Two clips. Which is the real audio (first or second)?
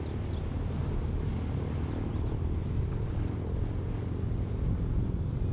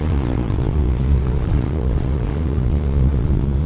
first